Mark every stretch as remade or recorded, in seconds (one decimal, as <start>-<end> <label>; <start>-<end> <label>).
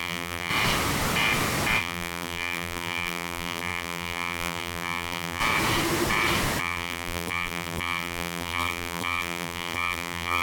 0.0-0.5 remade; 0.5-1.8 recorded; 1.8-5.4 remade; 5.4-6.6 recorded; 6.6-10.4 remade